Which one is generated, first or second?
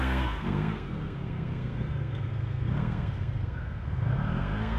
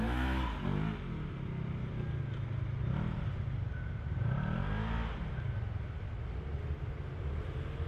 first